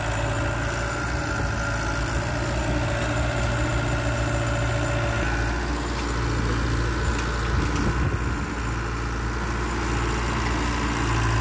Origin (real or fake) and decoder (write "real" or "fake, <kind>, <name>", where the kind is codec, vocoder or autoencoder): real